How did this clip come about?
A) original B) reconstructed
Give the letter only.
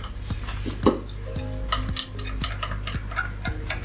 A